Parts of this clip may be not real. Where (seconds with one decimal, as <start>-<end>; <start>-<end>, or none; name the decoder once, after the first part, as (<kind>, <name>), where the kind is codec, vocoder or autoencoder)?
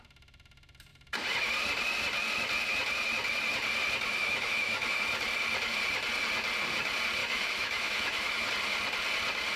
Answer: 4.2-4.9 (autoencoder, DAC-VAE); 7.2-8.5